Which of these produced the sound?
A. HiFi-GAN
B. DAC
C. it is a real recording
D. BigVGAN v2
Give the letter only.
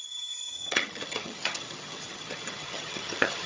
A